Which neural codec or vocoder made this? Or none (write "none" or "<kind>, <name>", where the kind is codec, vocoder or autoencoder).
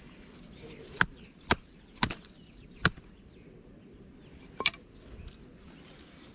none